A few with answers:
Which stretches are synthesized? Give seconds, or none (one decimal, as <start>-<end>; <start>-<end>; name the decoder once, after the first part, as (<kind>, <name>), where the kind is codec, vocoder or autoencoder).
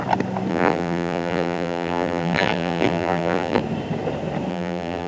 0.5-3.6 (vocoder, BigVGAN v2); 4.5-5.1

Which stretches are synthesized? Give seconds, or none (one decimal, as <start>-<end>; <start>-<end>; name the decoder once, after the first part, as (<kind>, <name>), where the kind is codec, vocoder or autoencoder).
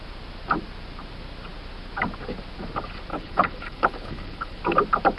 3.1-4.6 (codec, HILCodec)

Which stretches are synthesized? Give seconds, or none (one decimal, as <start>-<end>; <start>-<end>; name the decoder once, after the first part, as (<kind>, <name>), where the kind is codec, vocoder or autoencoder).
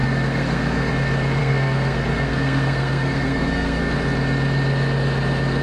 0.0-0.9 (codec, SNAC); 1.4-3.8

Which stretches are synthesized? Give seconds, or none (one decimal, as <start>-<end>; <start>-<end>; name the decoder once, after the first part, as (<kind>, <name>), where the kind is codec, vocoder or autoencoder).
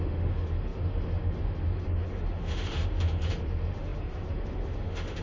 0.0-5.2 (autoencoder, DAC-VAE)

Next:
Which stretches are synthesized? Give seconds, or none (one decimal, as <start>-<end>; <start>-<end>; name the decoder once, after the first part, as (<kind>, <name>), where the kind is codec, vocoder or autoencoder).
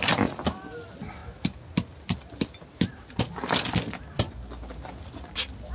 none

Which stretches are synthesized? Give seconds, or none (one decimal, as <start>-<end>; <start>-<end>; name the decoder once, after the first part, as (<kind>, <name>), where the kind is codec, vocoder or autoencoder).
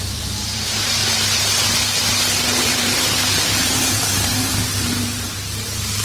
0.0-1.0 (vocoder, BigVGAN v2); 2.6-6.0